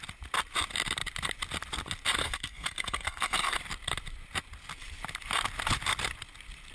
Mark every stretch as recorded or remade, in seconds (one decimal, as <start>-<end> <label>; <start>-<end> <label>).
0.0-2.2 recorded; 2.2-3.6 remade; 3.6-6.7 recorded